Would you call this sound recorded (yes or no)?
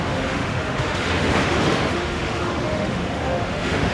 no